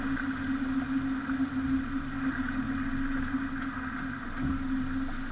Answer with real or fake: real